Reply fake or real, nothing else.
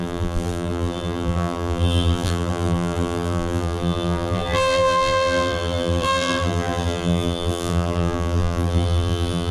fake